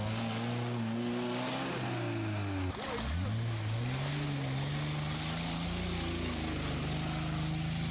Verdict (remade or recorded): recorded